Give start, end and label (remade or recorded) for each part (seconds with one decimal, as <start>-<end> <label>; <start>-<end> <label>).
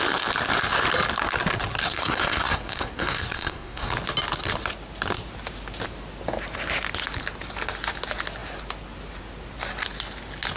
0.0-1.8 recorded; 1.8-3.9 remade; 3.9-10.6 recorded